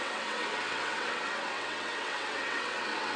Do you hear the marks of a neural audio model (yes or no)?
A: yes